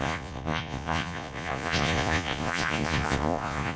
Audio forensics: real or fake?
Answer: fake